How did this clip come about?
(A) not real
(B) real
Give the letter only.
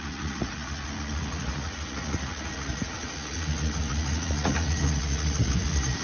A